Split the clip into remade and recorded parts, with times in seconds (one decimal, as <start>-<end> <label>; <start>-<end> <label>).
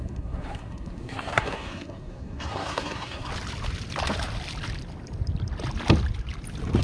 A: 0.0-3.3 remade; 3.3-6.8 recorded